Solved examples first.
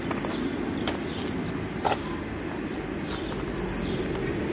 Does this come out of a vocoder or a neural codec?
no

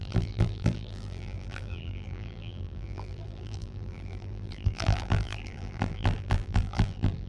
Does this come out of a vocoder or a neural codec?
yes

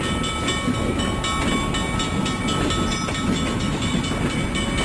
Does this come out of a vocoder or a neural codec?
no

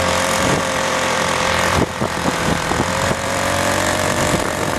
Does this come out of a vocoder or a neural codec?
yes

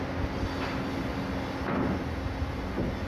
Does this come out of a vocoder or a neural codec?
no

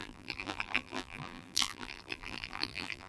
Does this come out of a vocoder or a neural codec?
yes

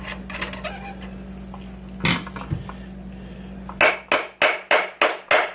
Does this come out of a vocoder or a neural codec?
no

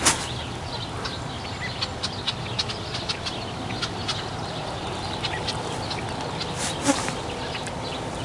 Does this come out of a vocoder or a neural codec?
no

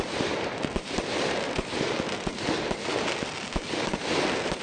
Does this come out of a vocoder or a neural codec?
yes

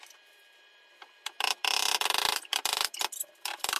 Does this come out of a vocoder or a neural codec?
yes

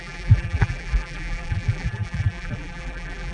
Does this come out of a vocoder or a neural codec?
yes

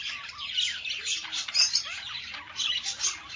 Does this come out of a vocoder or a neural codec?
no